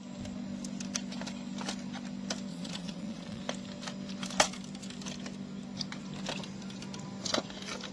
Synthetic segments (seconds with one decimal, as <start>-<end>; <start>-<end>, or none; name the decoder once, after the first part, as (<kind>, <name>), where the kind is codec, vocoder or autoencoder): 2.5-3.4 (vocoder, Vocos)